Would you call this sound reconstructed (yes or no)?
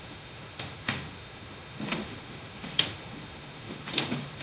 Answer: yes